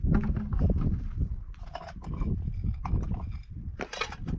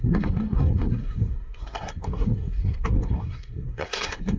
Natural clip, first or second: first